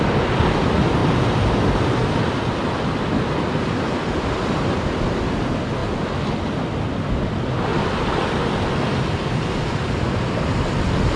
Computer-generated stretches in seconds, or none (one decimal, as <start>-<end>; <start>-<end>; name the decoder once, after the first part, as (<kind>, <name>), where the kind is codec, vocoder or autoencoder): none